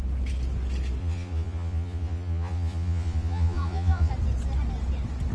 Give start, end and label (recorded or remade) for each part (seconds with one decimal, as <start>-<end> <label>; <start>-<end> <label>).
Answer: 0.0-1.0 recorded; 1.0-4.1 remade; 4.1-5.3 recorded